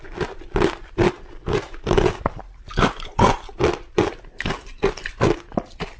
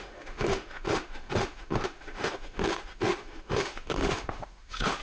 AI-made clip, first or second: second